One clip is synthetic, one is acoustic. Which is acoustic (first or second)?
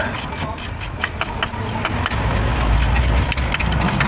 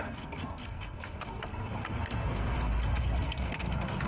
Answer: first